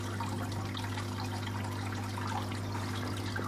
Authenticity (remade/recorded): recorded